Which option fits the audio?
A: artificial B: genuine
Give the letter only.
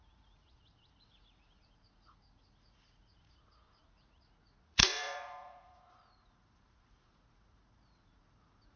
A